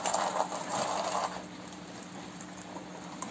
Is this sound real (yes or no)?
no